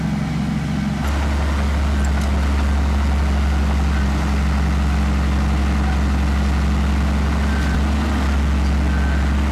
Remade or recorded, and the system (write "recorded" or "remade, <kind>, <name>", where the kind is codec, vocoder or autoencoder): recorded